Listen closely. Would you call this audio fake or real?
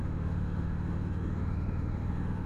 fake